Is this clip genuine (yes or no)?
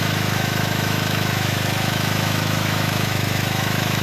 no